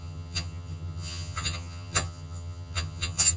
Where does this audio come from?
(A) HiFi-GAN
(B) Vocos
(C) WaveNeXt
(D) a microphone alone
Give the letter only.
A